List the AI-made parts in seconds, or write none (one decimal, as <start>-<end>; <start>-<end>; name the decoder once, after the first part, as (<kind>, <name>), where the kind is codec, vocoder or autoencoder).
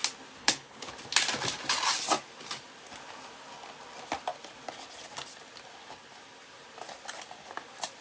0.4-0.9 (codec, HILCodec)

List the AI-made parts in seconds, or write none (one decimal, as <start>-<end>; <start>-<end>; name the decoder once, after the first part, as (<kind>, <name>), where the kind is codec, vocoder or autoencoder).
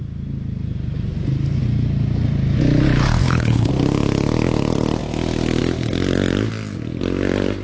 3.2-3.7 (codec, HILCodec)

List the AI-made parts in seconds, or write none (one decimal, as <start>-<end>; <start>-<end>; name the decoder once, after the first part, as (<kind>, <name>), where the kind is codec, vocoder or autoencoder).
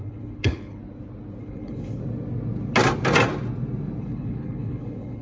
0.0-0.8 (codec, HILCodec); 1.4-2.0; 4.0-5.2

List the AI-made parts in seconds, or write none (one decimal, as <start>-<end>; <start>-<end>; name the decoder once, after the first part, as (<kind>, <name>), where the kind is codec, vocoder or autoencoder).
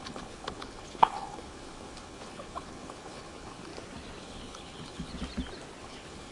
0.0-3.7 (codec, HILCodec); 4.2-5.1; 5.8-6.3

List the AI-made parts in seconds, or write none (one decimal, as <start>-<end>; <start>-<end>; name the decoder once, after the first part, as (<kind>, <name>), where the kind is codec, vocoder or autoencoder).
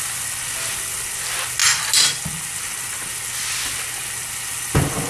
none